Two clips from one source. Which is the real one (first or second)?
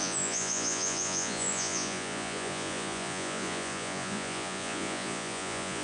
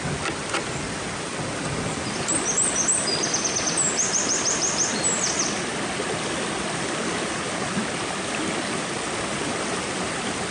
second